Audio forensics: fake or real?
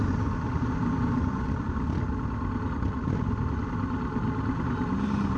real